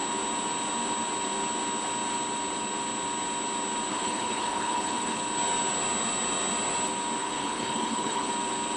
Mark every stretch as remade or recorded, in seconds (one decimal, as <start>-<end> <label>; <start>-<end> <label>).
0.0-3.9 recorded; 3.9-5.2 remade; 5.2-7.2 recorded; 7.2-8.3 remade; 8.3-8.8 recorded